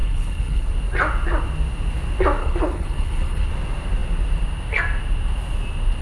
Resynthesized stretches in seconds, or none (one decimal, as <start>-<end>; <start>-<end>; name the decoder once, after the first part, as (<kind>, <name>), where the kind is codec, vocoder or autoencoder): 0.0-0.7 (codec, HILCodec); 2.4-3.5